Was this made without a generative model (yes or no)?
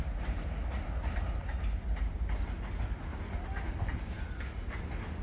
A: yes